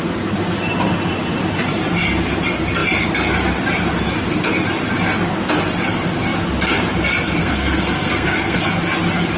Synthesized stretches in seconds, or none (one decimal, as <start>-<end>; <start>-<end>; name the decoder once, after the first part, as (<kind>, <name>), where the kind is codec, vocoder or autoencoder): 7.4-8.6 (codec, SNAC)